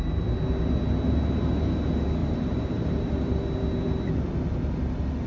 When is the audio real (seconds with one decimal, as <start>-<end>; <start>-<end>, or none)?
0.0-2.2; 3.4-5.3